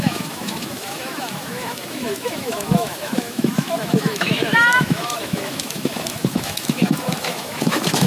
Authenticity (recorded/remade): remade